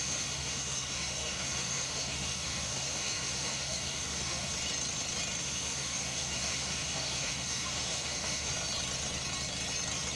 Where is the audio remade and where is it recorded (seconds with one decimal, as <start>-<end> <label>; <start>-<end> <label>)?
0.0-4.5 remade; 4.5-5.4 recorded; 5.4-8.5 remade; 8.5-10.2 recorded